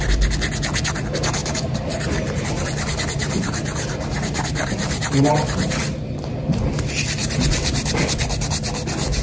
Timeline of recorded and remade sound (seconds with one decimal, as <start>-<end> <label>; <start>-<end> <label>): 0.0-1.4 recorded; 1.4-5.8 remade; 5.8-7.2 recorded; 7.2-7.9 remade; 7.9-9.2 recorded